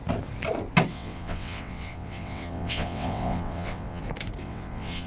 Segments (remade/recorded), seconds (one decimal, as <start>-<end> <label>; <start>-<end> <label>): 0.0-0.9 recorded; 0.9-4.0 remade; 4.0-4.4 recorded; 4.4-5.1 remade